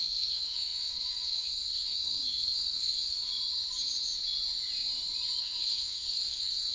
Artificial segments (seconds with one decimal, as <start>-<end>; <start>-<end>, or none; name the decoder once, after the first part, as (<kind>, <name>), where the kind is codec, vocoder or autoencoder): 0.0-3.3 (codec, SNAC); 5.4-6.7